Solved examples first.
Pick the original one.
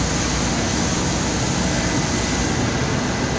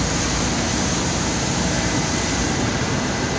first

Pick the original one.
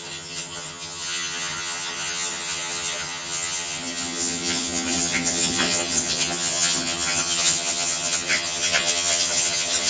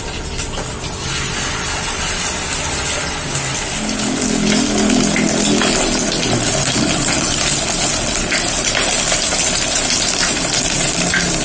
second